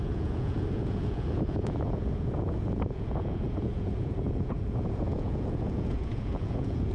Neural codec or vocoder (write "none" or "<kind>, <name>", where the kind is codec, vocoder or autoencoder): vocoder, Vocos